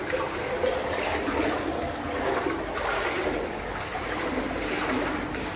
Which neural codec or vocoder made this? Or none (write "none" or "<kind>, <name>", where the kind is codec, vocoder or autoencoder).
none